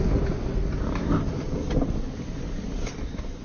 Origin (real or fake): real